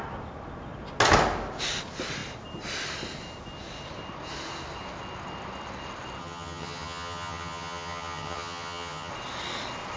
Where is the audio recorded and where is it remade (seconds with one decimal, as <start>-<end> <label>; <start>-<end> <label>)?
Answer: 0.0-6.2 recorded; 6.2-9.1 remade; 9.1-10.0 recorded